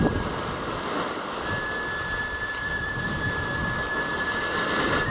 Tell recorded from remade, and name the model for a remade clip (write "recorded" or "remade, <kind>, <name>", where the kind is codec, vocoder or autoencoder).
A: recorded